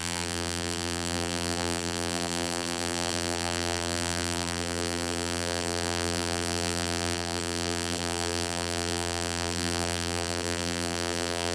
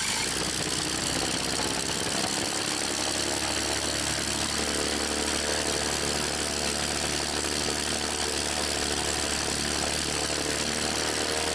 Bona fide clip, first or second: second